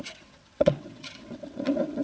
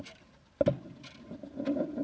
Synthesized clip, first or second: first